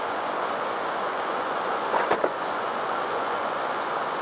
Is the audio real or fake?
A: fake